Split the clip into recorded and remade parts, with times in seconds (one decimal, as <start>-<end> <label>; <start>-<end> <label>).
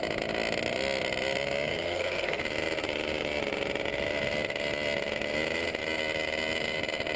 0.0-1.7 recorded; 1.7-2.4 remade; 2.4-7.2 recorded